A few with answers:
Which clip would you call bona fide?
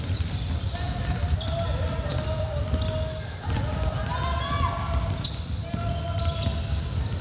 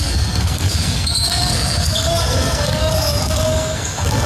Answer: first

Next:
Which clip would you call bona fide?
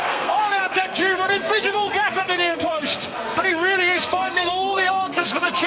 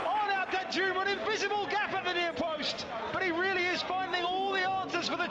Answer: second